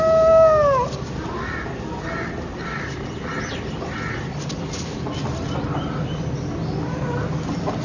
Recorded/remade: recorded